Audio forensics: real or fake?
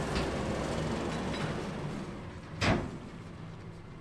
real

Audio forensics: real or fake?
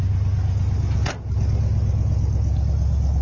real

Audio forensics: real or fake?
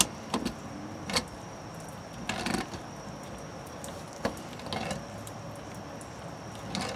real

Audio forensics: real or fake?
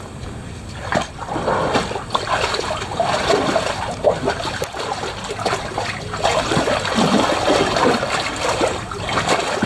real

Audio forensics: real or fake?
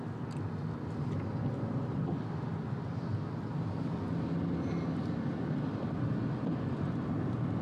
real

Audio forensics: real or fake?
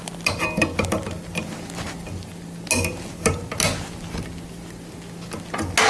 real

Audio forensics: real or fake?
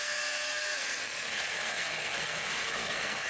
fake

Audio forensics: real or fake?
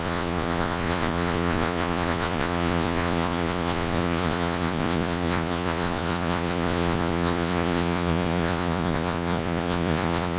fake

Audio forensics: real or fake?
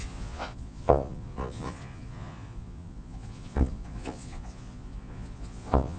fake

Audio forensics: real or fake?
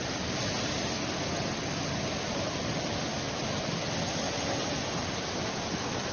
real